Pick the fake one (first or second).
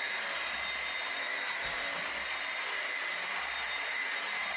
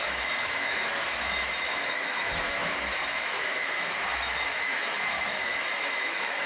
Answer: second